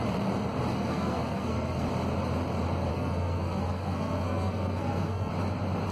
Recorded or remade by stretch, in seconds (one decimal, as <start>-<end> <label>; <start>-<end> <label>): 0.0-0.7 recorded; 0.7-1.9 remade; 1.9-2.9 recorded; 2.9-5.3 remade; 5.3-5.9 recorded